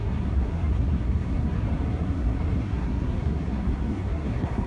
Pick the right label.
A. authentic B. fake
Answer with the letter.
B